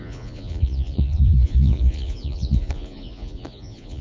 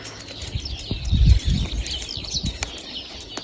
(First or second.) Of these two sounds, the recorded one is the second